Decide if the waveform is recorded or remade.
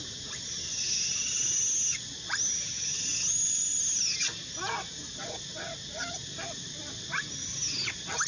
recorded